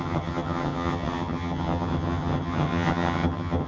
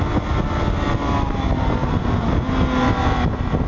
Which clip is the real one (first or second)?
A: second